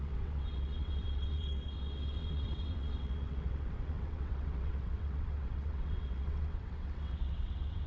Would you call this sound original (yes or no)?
no